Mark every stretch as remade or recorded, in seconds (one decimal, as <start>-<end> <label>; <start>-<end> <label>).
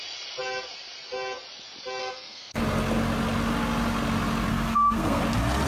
0.0-2.0 recorded; 2.0-2.6 remade; 2.6-4.5 recorded; 4.5-5.2 remade; 5.2-5.7 recorded